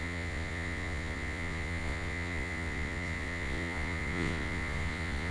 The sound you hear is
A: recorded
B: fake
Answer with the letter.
B